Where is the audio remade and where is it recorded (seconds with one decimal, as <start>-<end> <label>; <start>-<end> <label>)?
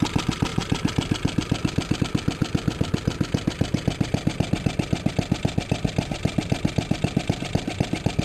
0.0-8.2 recorded